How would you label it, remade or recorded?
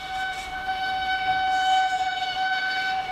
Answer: remade